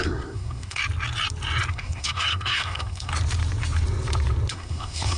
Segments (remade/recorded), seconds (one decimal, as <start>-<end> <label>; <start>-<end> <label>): 0.0-0.8 remade; 0.8-1.7 recorded; 1.7-3.1 remade; 3.1-4.5 recorded; 4.5-5.2 remade